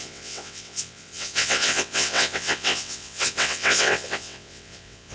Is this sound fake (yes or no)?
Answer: yes